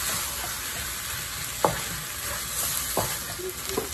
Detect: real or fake real